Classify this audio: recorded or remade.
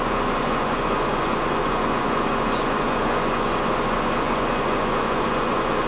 remade